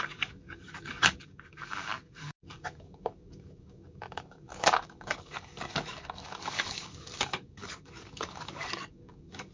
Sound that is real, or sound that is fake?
fake